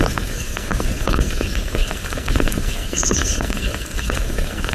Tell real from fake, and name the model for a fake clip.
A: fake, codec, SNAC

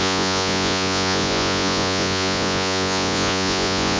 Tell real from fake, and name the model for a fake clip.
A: fake, vocoder, Vocos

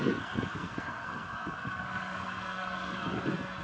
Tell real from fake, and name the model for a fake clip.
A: fake, codec, SNAC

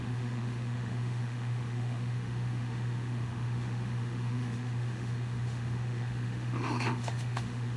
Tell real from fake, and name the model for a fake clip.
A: fake, autoencoder, DAC-VAE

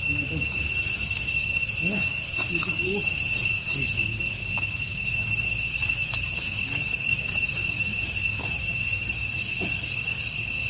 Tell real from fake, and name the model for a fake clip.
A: fake, codec, DAC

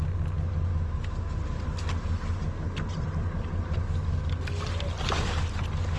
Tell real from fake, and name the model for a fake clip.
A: real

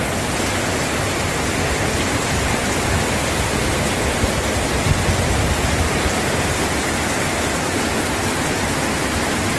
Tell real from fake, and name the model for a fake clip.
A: real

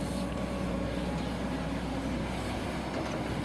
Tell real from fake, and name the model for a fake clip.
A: real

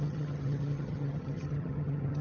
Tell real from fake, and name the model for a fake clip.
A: fake, vocoder, HiFi-GAN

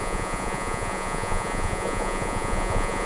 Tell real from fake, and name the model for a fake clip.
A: fake, vocoder, Vocos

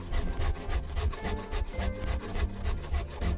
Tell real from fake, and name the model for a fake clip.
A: real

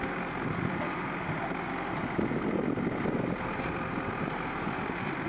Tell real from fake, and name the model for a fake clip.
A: real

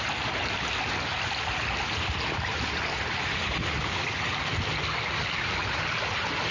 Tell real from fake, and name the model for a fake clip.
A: real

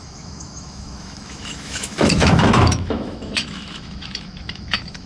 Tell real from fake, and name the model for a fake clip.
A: fake, autoencoder, DAC-VAE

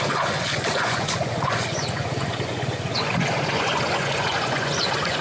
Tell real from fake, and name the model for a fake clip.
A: fake, vocoder, Vocos